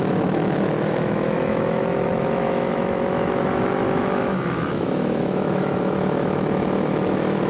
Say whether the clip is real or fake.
fake